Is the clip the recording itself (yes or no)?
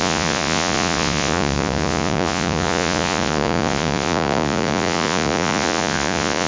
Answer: no